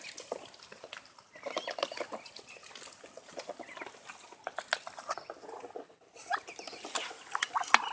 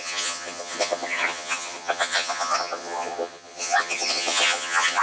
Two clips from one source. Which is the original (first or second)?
first